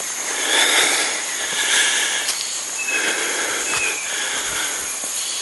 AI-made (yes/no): no